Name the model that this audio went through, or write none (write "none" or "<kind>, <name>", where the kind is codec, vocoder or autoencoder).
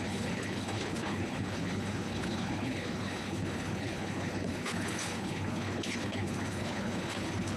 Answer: codec, HILCodec